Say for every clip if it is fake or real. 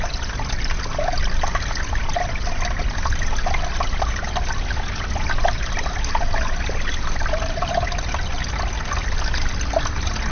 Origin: real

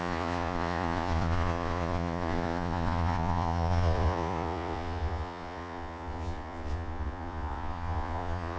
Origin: fake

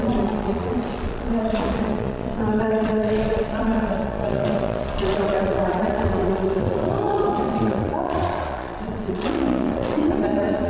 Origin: fake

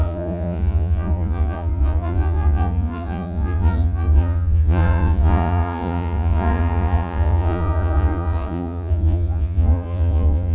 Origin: fake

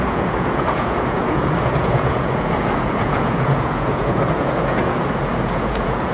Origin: fake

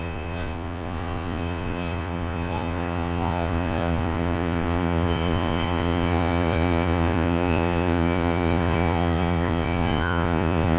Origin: fake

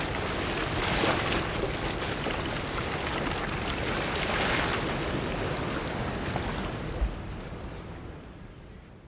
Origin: real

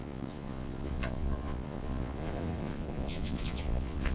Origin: fake